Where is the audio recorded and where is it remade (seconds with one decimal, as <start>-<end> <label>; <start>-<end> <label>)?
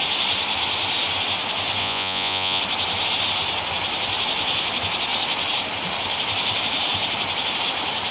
0.0-1.8 recorded; 1.8-2.6 remade; 2.6-8.1 recorded